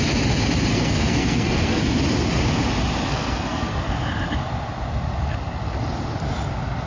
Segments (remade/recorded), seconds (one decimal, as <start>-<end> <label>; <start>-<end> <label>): 0.0-0.7 recorded; 0.7-1.8 remade; 1.8-3.1 recorded; 3.1-3.8 remade; 3.8-6.9 recorded